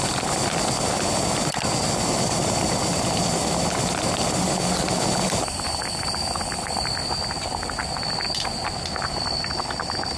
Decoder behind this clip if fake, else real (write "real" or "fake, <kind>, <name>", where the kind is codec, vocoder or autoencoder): real